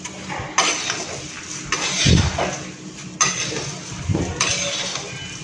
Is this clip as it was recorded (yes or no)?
yes